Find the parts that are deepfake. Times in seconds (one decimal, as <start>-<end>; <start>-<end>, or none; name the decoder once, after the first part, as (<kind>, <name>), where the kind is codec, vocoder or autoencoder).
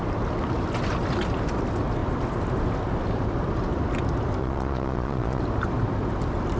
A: 4.4-5.4 (vocoder, Vocos)